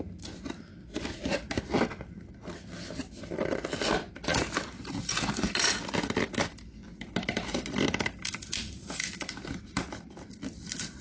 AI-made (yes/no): no